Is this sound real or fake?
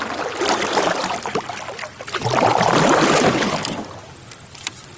real